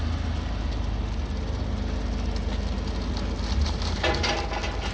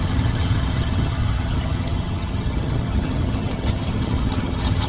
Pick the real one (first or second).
first